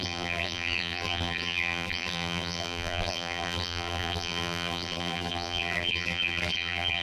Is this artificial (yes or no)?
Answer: yes